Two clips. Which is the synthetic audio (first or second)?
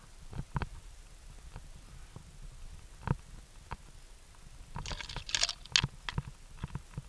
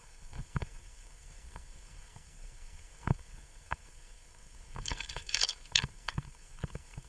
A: second